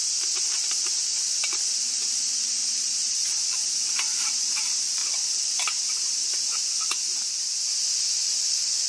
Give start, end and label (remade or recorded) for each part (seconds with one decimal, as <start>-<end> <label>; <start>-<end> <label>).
0.0-1.1 remade; 1.1-1.9 recorded; 1.9-5.0 remade; 5.0-6.4 recorded; 6.4-8.9 remade